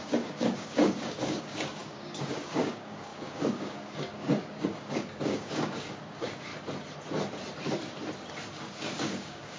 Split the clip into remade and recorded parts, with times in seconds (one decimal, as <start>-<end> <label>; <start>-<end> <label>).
0.0-6.5 remade; 6.5-8.5 recorded; 8.5-9.6 remade